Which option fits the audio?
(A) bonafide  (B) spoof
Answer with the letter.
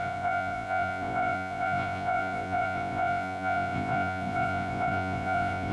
B